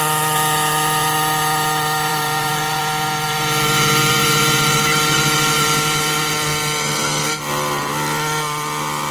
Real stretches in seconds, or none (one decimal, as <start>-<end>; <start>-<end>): 0.0-2.1; 2.8-4.1; 6.3-9.1

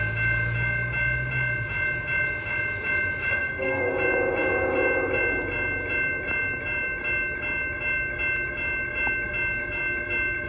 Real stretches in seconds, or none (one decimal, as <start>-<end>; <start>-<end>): 0.0-3.3; 3.9-10.5

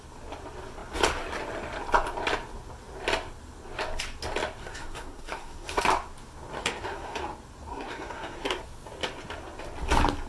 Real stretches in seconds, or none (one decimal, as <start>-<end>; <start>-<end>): 0.0-4.6; 5.8-6.6; 7.2-7.7; 8.6-10.3

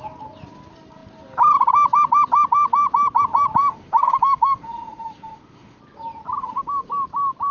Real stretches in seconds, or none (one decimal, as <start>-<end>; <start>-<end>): 0.0-3.6; 5.8-6.4; 6.9-7.5

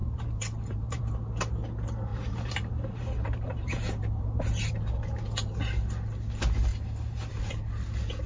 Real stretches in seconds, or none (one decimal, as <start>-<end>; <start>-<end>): 1.0-2.1; 4.7-6.7; 7.3-8.3

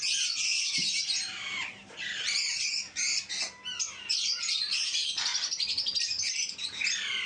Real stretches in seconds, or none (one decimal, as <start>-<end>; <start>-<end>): 0.0-0.5; 2.7-7.3

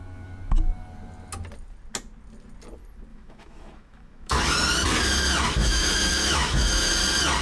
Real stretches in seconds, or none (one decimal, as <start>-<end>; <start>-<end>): 0.0-3.1; 4.4-5.6; 6.9-7.4